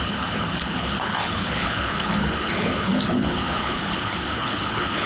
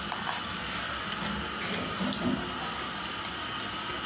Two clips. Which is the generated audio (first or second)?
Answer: first